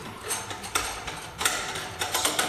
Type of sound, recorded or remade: remade